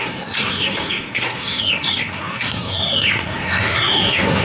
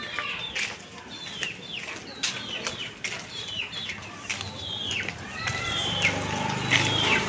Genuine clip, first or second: second